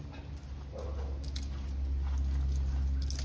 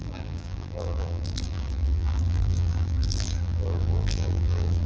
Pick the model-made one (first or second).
second